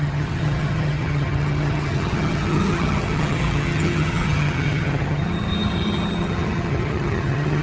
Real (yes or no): no